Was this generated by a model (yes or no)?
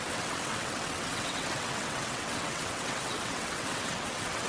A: yes